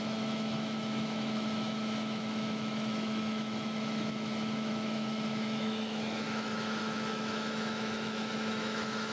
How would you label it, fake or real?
fake